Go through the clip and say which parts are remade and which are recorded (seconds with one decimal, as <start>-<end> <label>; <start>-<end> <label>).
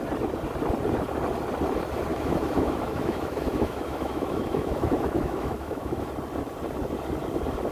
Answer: 0.0-2.1 recorded; 2.1-6.1 remade; 6.1-7.7 recorded